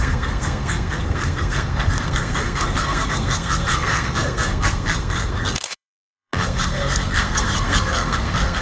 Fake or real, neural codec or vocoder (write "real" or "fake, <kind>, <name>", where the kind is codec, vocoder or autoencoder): fake, codec, SNAC